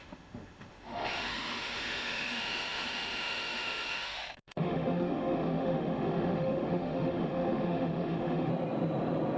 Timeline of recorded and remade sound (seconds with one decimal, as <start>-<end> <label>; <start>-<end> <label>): 0.0-8.5 remade; 8.5-9.4 recorded